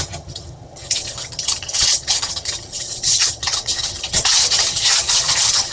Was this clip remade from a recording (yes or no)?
yes